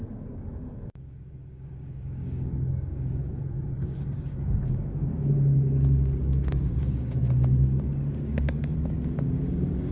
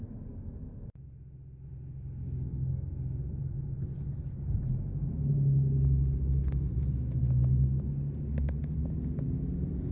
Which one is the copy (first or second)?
first